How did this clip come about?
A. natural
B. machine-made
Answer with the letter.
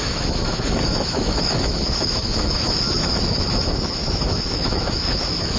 B